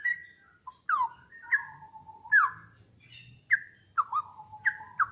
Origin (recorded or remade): recorded